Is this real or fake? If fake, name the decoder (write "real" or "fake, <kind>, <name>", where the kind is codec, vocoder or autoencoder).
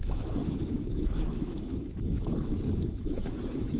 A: fake, autoencoder, DAC-VAE